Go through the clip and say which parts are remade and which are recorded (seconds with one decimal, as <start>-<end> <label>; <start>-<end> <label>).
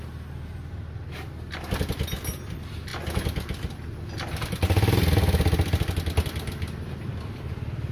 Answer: 0.0-7.9 recorded